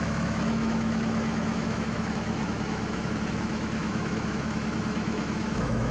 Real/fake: fake